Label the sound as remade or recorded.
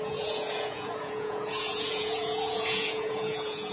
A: remade